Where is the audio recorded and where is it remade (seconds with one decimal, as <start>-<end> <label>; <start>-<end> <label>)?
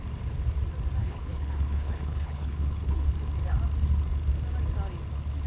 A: 0.0-1.0 recorded; 1.0-3.1 remade; 3.1-5.5 recorded